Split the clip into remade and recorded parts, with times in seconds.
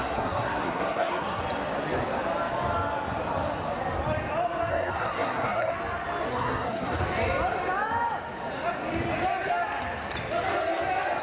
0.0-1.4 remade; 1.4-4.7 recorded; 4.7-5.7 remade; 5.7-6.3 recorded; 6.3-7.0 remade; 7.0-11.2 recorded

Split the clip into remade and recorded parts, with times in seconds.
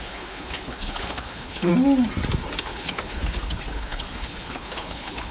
0.0-1.7 remade; 1.7-2.6 recorded; 2.6-5.3 remade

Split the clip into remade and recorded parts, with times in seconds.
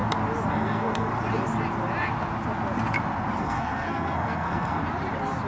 0.0-0.5 recorded; 0.5-1.1 remade; 1.1-3.4 recorded; 3.4-4.8 remade; 4.8-5.5 recorded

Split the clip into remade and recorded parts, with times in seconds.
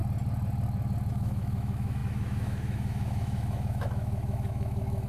0.0-1.1 recorded; 1.1-5.1 remade